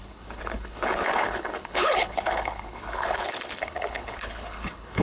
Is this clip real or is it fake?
fake